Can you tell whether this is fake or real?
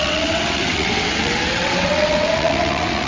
fake